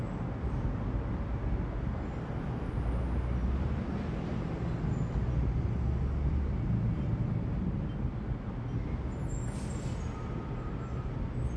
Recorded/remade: recorded